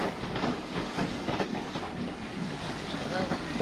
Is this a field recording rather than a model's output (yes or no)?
no